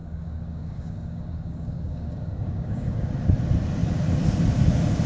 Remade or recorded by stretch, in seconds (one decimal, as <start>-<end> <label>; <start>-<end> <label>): 0.0-3.1 remade; 3.1-5.1 recorded